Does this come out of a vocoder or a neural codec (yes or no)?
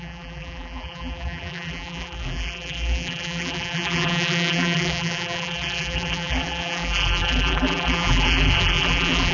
yes